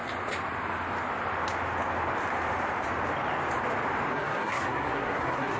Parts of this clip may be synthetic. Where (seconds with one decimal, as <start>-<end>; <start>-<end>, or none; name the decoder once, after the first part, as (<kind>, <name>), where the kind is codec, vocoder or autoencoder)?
4.1-5.6 (codec, SNAC)